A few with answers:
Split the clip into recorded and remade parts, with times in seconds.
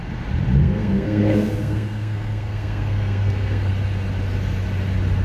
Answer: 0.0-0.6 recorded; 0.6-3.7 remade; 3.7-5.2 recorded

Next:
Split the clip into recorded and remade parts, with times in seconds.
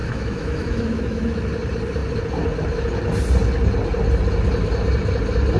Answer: 0.0-1.5 remade; 1.5-5.6 recorded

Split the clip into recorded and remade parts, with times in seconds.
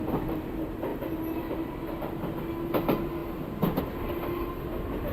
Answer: 0.0-5.1 recorded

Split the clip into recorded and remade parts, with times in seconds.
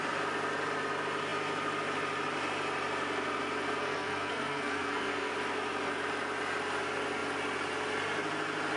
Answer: 0.0-3.8 recorded; 3.8-5.3 remade; 5.3-8.8 recorded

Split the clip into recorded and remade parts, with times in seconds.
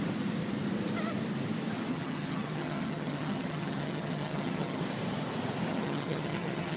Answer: 0.0-1.9 recorded; 1.9-4.8 remade; 4.8-5.7 recorded; 5.7-6.8 remade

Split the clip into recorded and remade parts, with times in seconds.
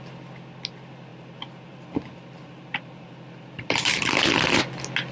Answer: 0.0-1.1 recorded; 1.1-4.2 remade; 4.2-5.1 recorded